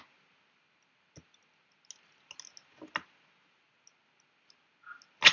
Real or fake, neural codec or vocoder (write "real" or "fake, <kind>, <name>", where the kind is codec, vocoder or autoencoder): real